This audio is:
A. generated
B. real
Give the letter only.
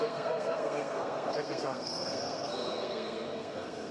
A